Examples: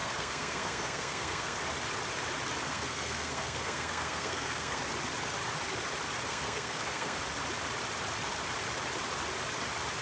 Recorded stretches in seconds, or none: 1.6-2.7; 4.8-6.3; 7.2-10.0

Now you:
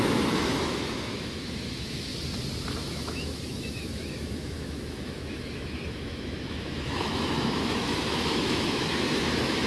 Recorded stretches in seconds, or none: 2.1-2.8

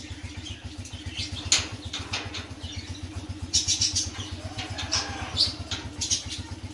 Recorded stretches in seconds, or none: 0.0-1.7; 4.8-6.7

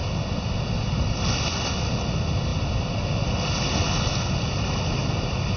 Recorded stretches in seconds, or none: 0.0-5.6